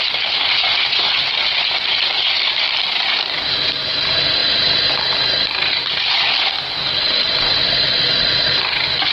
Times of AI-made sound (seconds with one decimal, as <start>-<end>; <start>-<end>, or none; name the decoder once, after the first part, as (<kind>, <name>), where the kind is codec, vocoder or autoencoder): 0.7-1.7 (vocoder, BigVGAN v2); 7.6-8.1

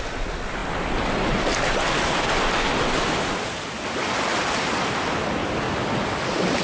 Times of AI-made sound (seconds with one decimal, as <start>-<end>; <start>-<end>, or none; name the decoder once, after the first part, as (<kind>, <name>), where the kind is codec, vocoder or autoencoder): none

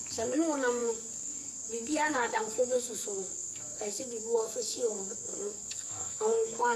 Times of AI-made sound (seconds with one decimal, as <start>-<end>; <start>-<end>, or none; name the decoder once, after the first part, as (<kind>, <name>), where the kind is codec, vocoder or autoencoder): 0.0-6.8 (codec, SNAC)

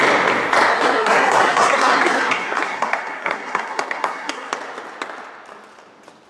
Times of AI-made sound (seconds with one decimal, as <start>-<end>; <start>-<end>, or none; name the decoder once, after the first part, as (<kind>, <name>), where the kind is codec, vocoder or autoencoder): 0.7-4.5 (codec, SNAC)